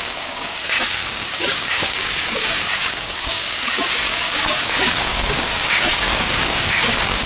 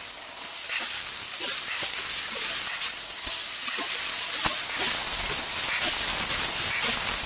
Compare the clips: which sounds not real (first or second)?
first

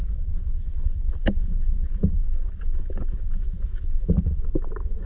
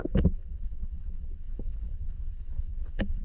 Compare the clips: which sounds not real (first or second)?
second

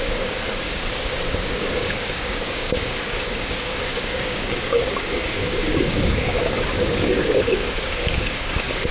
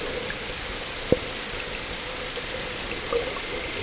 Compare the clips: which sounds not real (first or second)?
first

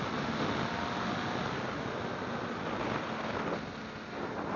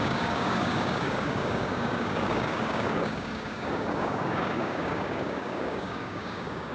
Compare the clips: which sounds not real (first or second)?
second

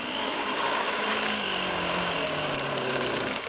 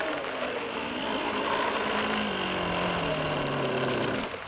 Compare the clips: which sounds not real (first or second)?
first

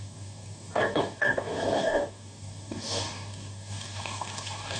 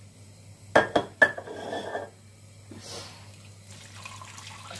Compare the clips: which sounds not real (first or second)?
first